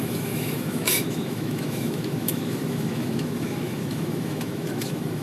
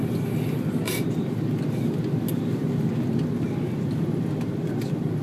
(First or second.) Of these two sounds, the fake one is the first